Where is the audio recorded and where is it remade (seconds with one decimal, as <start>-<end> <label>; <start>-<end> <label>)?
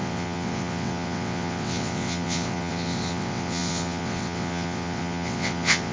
0.0-5.9 remade